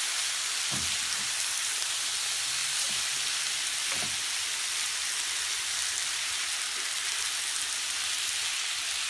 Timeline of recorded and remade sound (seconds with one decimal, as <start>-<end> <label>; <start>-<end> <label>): 0.0-2.6 recorded; 2.6-3.2 remade; 3.2-5.8 recorded; 5.8-6.4 remade; 6.4-9.1 recorded